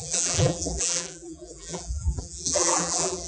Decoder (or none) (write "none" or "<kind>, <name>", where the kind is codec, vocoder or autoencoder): vocoder, BigVGAN v2